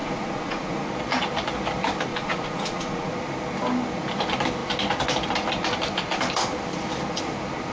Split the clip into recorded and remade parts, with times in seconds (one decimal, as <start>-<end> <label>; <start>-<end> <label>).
0.0-0.9 remade; 0.9-2.1 recorded; 2.1-3.1 remade; 3.1-7.7 recorded